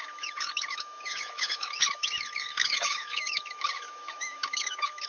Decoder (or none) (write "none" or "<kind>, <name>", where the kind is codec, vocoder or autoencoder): autoencoder, DAC-VAE